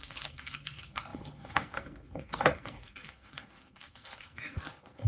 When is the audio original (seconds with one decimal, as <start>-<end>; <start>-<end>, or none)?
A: none